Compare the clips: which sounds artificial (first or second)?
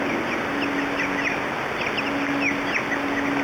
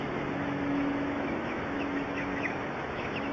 second